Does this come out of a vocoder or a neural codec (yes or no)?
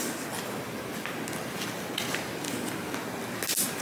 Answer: no